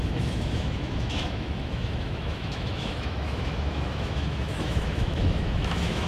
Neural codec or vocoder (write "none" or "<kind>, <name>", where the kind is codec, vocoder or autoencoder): autoencoder, DAC-VAE